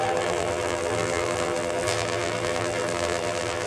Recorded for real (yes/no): no